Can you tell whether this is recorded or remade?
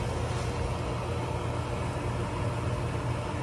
recorded